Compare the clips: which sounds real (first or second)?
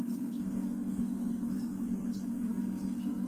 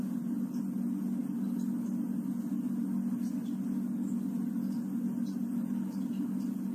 second